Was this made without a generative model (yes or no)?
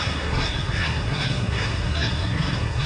no